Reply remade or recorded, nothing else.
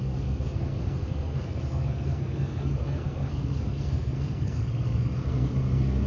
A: remade